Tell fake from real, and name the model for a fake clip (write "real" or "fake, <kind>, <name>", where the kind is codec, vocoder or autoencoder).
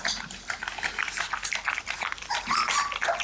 real